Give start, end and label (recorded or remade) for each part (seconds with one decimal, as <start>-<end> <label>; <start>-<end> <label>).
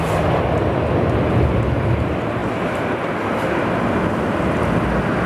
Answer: 0.0-5.3 recorded